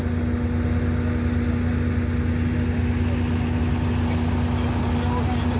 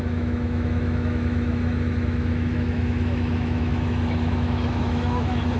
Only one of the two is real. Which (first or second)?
first